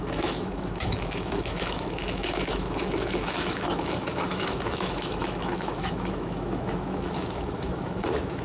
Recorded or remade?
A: remade